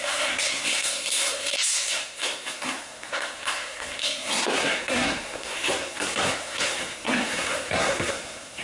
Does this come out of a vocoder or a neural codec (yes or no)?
yes